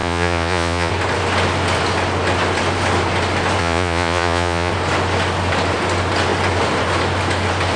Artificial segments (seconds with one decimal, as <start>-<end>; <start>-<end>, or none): 0.0-0.9; 3.6-4.7

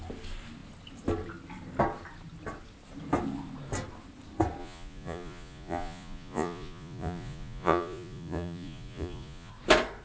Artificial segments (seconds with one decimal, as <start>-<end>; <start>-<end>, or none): 4.6-9.5

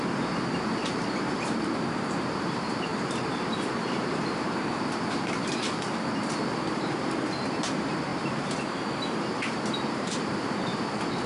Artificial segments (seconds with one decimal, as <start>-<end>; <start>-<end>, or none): 0.0-11.3

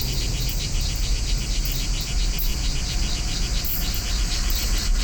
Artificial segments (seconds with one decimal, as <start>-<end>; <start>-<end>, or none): none